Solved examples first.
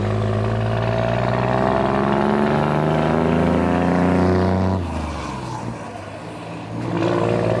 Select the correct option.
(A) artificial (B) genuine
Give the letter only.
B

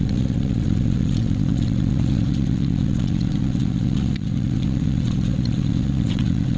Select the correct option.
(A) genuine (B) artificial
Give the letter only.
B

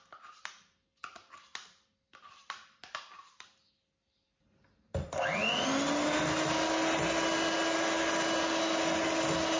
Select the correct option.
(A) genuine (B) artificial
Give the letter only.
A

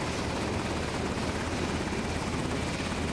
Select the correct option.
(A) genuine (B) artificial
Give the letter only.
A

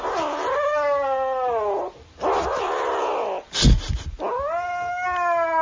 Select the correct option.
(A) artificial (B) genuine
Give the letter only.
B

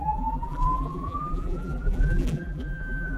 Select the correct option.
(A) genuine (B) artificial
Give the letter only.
B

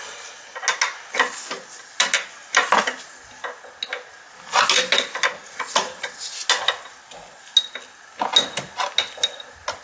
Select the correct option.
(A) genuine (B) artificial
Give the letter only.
A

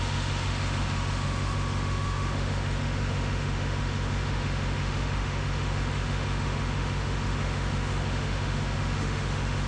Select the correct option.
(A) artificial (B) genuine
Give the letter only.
A